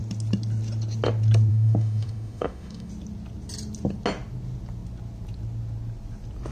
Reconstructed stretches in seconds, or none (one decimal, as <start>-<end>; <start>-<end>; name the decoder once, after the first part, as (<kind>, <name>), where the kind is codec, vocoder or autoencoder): 1.5-2.9 (autoencoder, DAC-VAE)